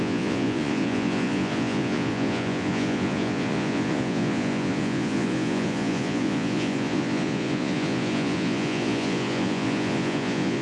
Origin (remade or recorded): remade